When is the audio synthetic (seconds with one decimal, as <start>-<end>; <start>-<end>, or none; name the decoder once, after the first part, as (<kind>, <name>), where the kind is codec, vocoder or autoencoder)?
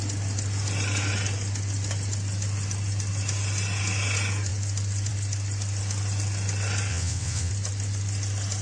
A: 6.9-7.5 (vocoder, WaveNeXt)